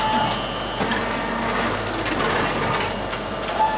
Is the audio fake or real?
real